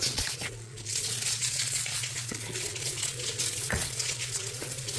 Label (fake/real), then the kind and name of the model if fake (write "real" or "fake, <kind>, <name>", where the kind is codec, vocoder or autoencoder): fake, vocoder, Vocos